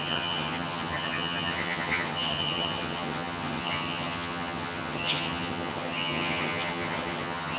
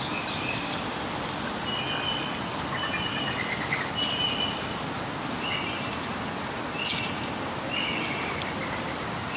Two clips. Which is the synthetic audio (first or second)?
first